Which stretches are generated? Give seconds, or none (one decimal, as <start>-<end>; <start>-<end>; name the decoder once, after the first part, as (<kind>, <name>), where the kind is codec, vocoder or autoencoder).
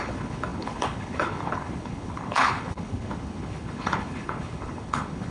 0.0-5.3 (codec, HILCodec)